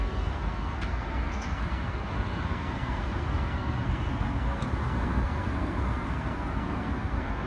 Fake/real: fake